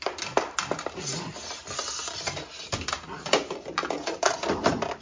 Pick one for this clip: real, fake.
fake